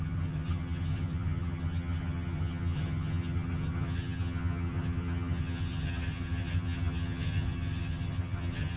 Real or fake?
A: fake